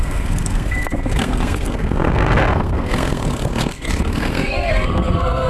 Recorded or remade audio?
remade